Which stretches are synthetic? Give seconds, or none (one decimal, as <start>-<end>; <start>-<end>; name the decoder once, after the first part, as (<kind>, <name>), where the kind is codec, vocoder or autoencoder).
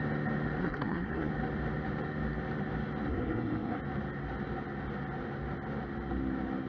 0.6-1.3 (codec, SNAC); 3.1-3.8